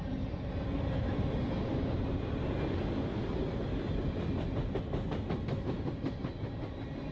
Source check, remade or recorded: recorded